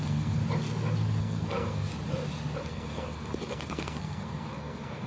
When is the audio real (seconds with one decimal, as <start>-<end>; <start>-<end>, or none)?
0.4-1.2; 1.9-2.6